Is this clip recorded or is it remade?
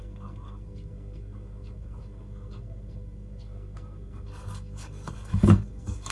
remade